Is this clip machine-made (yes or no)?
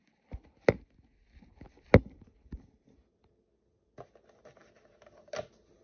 no